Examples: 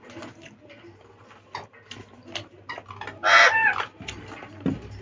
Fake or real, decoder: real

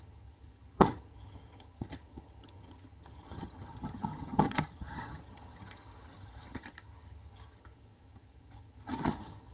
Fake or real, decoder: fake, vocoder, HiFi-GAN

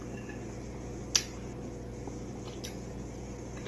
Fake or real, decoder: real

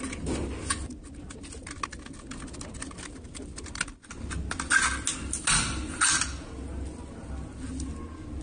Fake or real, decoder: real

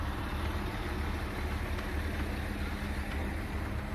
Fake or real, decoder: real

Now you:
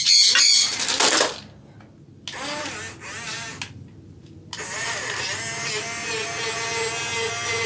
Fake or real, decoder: real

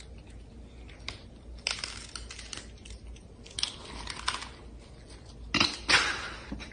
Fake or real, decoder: real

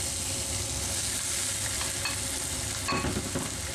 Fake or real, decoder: real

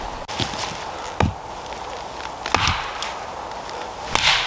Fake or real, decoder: real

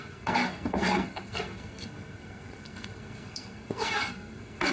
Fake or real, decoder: fake, codec, SNAC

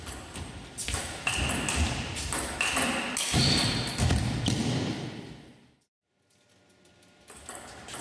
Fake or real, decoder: real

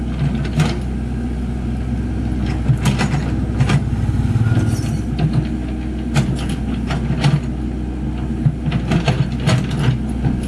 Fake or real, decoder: real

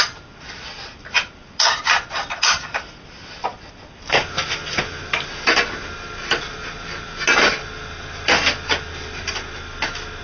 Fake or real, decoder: real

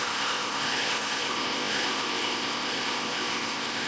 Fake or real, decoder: fake, codec, ZipCodec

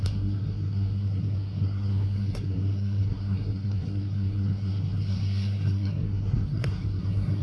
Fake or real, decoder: fake, codec, SNAC